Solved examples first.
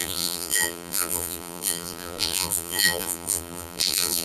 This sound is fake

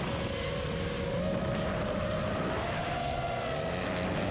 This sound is real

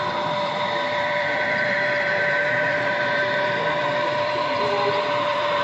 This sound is fake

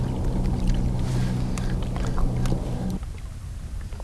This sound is real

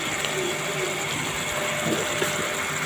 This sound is real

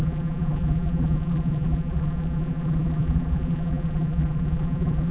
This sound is fake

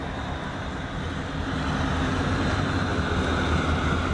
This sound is real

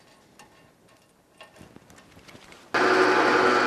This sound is real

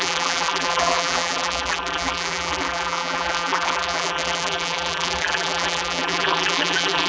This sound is fake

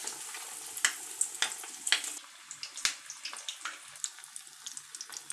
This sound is real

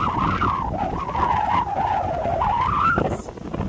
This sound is real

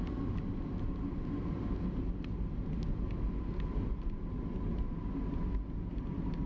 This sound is real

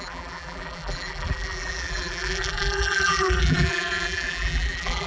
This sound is fake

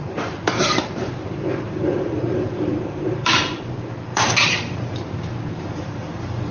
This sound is fake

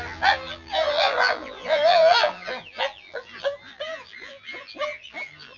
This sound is fake